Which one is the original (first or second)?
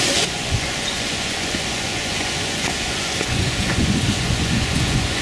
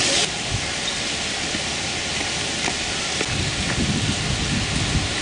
second